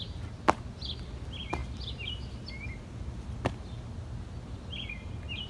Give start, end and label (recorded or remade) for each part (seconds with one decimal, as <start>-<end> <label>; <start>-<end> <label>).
0.0-5.5 recorded